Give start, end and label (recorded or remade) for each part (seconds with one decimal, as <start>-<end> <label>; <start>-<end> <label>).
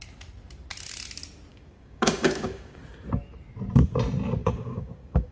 0.0-1.5 recorded; 1.5-2.8 remade; 2.8-4.4 recorded; 4.4-5.3 remade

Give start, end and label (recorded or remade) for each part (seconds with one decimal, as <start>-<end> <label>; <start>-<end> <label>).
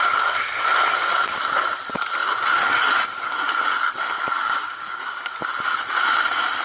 0.0-4.4 recorded; 4.4-5.3 remade; 5.3-6.6 recorded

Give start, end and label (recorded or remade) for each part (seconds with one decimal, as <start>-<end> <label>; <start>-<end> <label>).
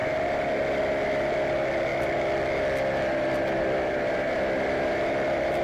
0.0-5.6 recorded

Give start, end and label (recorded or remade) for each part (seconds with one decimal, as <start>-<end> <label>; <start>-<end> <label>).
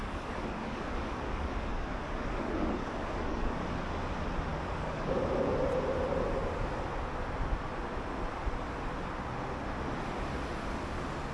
0.0-3.6 remade; 3.6-4.5 recorded; 4.5-5.1 remade; 5.1-11.3 recorded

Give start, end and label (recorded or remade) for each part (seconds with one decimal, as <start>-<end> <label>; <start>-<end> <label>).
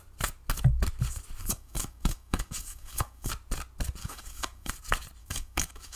0.0-1.4 recorded; 1.4-3.3 remade; 3.3-4.0 recorded; 4.0-4.7 remade; 4.7-5.2 recorded; 5.2-6.0 remade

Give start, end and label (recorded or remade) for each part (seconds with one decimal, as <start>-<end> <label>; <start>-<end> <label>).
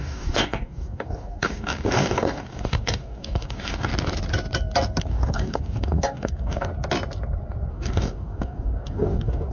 0.0-3.9 remade; 3.9-5.0 recorded; 5.0-6.7 remade; 6.7-7.7 recorded; 7.7-9.5 remade